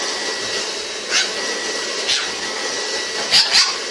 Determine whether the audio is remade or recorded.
recorded